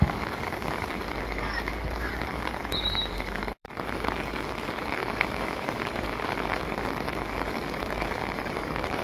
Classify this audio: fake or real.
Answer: fake